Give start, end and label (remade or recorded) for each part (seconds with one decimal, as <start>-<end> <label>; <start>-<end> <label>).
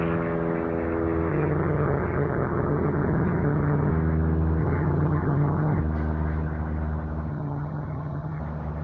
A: 0.0-1.3 recorded; 1.3-3.9 remade; 3.9-4.6 recorded; 4.6-5.8 remade; 5.8-7.3 recorded; 7.3-8.4 remade; 8.4-8.8 recorded